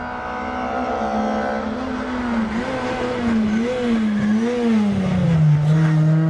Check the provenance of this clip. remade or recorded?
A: recorded